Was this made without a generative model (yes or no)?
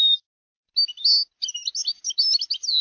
yes